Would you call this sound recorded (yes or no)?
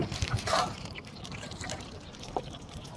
no